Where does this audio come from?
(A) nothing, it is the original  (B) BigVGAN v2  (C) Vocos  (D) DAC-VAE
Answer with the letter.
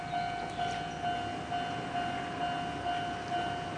A